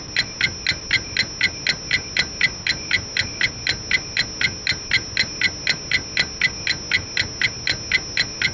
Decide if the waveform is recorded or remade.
recorded